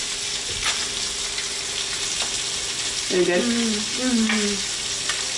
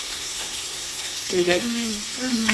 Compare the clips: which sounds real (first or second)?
first